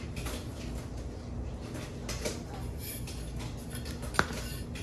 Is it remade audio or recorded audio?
recorded